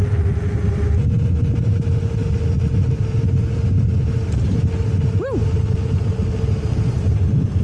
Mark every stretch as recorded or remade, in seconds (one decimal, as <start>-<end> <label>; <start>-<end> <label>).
0.0-7.6 recorded